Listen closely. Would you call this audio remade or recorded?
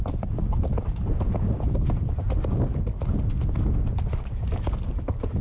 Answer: recorded